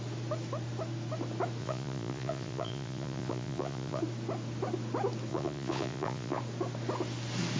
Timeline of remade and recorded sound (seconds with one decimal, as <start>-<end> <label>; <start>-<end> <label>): 0.0-1.6 recorded; 1.6-4.0 remade; 4.0-5.3 recorded; 5.3-6.4 remade; 6.4-7.6 recorded